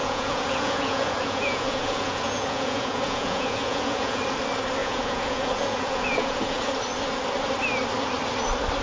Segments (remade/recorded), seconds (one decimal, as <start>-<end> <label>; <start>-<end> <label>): 0.0-4.2 remade; 4.2-4.8 recorded; 4.8-6.7 remade; 6.7-8.8 recorded